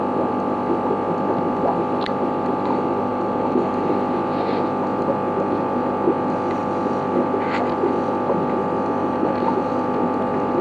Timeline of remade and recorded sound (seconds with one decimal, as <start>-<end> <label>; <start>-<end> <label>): 0.0-3.1 recorded; 3.1-3.7 remade; 3.7-9.0 recorded; 9.0-9.7 remade; 9.7-10.6 recorded